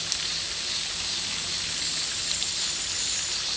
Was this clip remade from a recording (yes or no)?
no